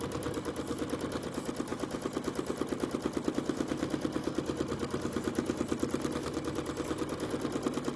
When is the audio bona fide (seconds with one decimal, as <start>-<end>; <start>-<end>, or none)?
0.0-8.0